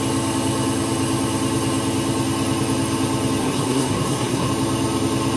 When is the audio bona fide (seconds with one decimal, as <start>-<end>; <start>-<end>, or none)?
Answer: 0.0-3.4; 4.5-5.4